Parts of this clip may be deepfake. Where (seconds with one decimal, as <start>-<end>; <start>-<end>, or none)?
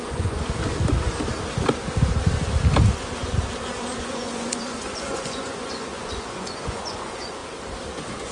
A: 0.0-0.4; 4.0-7.4; 7.9-8.3